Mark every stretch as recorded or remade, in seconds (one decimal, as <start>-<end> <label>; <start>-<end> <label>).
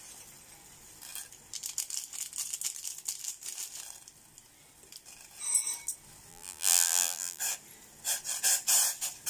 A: 0.0-6.3 recorded; 6.3-7.4 remade; 7.4-9.3 recorded